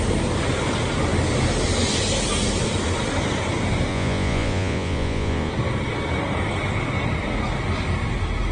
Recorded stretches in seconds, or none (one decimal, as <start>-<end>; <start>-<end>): 0.0-3.9; 5.5-8.5